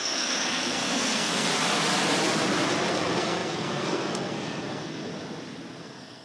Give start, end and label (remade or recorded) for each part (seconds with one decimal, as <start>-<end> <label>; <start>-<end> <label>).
0.0-1.5 remade; 1.5-2.9 recorded; 2.9-5.1 remade; 5.1-5.8 recorded; 5.8-6.2 remade